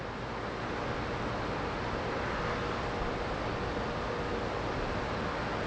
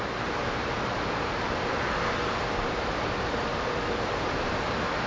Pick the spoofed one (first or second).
second